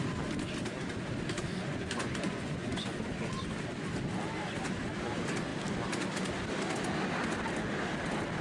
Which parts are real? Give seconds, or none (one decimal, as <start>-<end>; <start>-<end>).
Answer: 0.0-1.4; 3.0-8.4

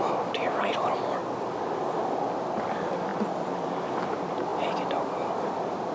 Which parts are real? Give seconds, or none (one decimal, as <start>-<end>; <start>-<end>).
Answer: 0.0-5.9

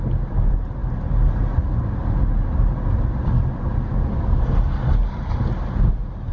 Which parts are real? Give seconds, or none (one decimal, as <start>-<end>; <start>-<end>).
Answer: 0.0-6.3